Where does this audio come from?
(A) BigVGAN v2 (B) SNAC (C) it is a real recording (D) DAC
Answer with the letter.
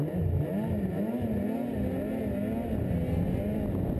C